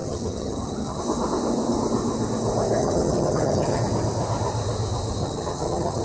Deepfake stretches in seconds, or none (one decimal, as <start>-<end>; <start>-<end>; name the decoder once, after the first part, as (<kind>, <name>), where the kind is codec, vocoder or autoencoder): 0.0-1.0 (vocoder, HiFi-GAN); 2.8-3.8; 5.2-6.0